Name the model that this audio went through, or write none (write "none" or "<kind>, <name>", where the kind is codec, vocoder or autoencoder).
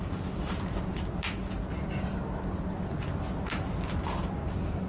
none